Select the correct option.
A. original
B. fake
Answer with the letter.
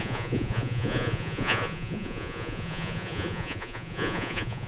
B